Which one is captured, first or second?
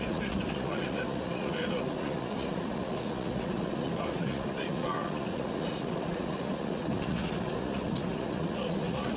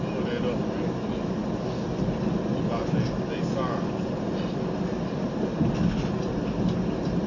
second